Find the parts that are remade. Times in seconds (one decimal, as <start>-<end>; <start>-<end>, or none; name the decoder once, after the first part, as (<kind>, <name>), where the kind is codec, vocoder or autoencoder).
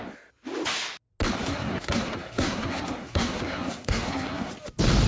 1.4-4.5 (codec, SNAC)